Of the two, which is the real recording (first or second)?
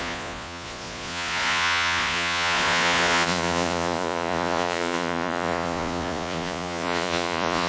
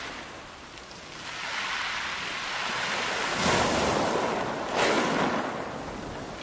second